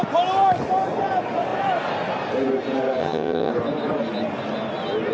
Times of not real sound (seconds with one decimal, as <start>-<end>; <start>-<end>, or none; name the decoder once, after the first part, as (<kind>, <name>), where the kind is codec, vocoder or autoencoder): 3.0-3.5 (vocoder, HiFi-GAN)

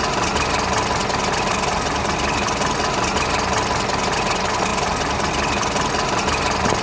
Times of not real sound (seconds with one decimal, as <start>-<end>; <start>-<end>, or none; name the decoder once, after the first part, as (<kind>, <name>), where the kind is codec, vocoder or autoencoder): none

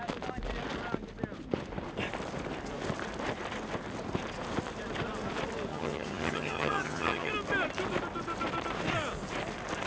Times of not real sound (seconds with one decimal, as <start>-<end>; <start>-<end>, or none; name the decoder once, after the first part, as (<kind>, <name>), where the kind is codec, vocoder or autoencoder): 5.7-7.3 (vocoder, HiFi-GAN)

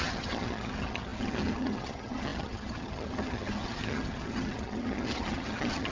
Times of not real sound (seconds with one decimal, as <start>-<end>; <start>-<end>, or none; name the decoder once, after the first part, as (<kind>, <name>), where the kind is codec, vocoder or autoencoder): 0.0-5.9 (vocoder, HiFi-GAN)

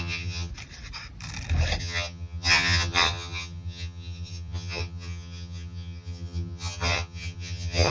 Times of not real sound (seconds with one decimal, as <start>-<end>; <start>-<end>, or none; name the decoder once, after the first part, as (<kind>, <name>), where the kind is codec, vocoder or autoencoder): 0.0-0.5 (vocoder, HiFi-GAN); 1.8-7.9

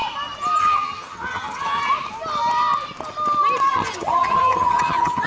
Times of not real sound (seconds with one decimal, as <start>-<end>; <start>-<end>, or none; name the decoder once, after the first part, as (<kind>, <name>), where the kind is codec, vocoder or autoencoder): 0.6-1.8 (vocoder, HiFi-GAN); 3.7-5.3

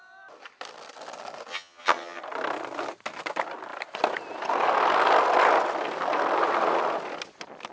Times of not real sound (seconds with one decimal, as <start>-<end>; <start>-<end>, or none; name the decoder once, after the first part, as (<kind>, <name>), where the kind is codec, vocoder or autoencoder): 1.5-2.2 (vocoder, HiFi-GAN)

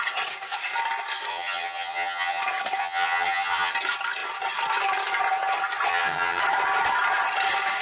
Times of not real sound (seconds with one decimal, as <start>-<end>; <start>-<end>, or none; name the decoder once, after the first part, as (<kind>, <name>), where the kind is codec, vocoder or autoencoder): 1.3-2.4 (vocoder, HiFi-GAN); 2.8-3.7; 5.9-6.4